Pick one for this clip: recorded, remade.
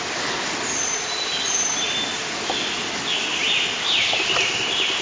recorded